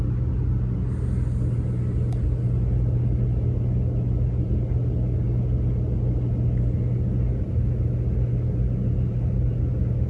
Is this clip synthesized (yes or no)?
no